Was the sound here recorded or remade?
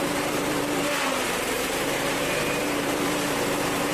remade